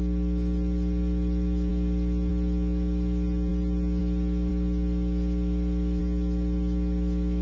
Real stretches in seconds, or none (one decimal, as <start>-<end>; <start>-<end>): 0.0-7.4